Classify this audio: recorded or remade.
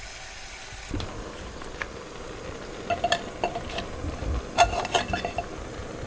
recorded